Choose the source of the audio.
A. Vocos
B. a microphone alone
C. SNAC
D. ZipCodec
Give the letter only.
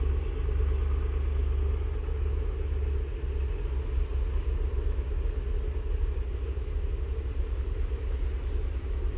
B